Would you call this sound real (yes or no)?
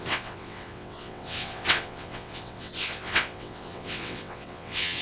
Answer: no